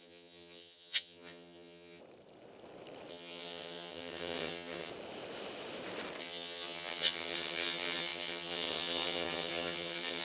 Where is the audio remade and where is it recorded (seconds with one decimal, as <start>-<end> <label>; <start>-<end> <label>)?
0.0-2.0 remade; 2.0-3.1 recorded; 3.1-4.9 remade; 4.9-6.2 recorded; 6.2-10.2 remade